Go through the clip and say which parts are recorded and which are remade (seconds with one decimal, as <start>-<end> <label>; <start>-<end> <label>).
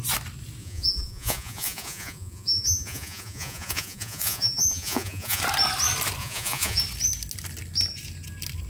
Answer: 0.0-0.6 recorded; 0.6-5.4 remade; 5.4-6.2 recorded; 6.2-6.8 remade; 6.8-8.7 recorded